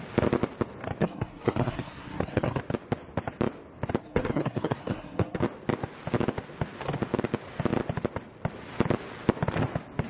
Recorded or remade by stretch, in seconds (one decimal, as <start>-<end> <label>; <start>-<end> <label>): 0.0-1.0 recorded; 1.0-2.6 remade; 2.6-4.0 recorded; 4.0-5.4 remade; 5.4-10.1 recorded